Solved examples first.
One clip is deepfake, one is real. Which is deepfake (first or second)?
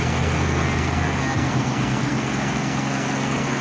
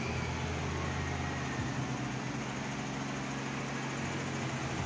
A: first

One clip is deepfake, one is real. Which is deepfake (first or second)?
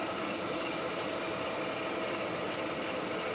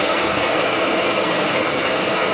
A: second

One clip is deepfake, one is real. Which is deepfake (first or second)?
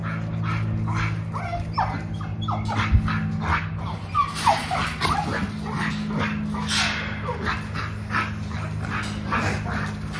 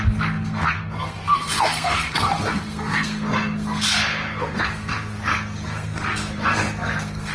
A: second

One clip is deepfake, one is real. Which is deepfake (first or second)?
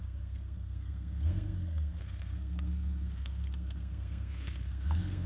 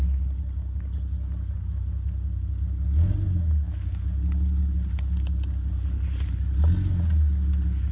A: first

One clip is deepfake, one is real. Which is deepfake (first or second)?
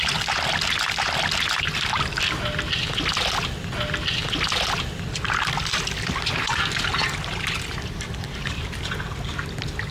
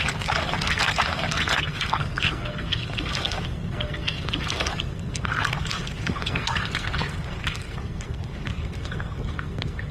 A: second